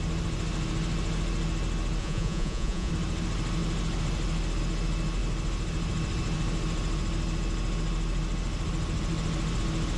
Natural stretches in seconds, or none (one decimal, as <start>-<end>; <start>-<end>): 0.0-2.0; 2.9-10.0